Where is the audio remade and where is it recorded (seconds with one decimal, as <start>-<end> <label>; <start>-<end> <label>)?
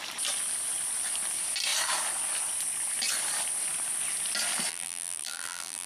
0.0-4.7 recorded; 4.7-5.9 remade